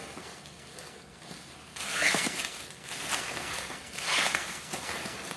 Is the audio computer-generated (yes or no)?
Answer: yes